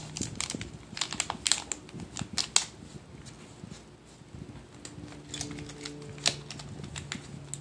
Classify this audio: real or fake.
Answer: real